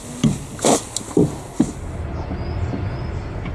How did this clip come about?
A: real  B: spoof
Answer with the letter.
A